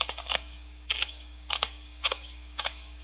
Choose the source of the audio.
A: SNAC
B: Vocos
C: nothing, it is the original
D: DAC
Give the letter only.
D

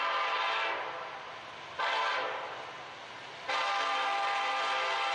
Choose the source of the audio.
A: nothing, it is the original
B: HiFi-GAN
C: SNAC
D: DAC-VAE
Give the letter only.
A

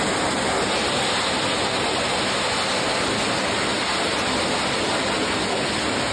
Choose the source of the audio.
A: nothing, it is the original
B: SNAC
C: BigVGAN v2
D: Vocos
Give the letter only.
A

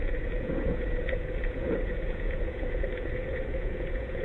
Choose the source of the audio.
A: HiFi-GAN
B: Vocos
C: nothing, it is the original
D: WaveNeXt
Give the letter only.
B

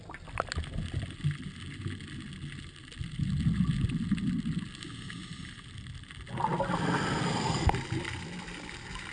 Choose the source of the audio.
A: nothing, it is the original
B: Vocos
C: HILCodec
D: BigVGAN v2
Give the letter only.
A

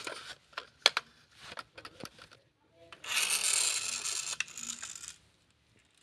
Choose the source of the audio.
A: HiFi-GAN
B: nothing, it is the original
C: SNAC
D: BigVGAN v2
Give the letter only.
B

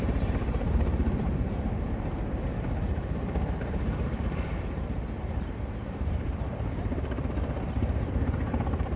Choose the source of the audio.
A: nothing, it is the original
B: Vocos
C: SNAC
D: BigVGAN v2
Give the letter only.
D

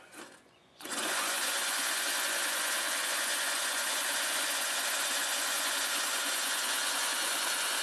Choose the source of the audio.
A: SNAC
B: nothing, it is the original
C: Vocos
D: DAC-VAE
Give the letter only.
C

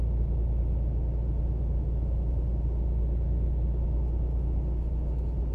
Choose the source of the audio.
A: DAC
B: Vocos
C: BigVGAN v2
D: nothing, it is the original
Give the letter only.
D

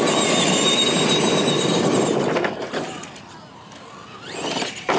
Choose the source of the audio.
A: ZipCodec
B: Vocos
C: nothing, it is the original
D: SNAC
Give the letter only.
C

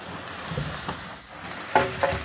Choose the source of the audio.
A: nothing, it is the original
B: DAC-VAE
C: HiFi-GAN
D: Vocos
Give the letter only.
A